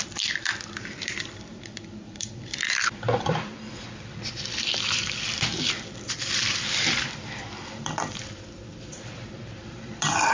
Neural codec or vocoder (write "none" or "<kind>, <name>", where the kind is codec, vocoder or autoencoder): vocoder, BigVGAN v2